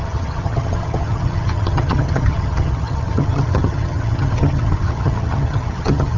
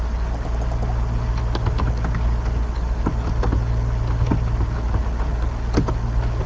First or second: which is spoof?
first